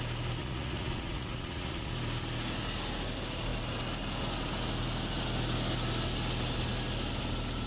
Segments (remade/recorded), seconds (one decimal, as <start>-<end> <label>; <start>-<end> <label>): 0.0-0.4 recorded; 0.4-1.9 remade; 1.9-7.7 recorded